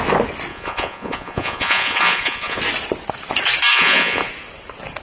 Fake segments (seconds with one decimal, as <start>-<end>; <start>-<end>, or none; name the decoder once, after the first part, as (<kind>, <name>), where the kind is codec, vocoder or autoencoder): 0.5-2.6 (vocoder, Vocos); 3.7-4.3